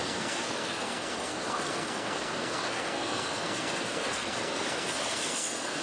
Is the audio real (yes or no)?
no